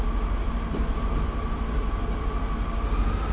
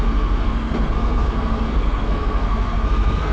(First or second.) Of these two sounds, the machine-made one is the second